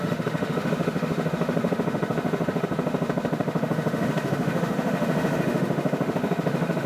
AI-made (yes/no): yes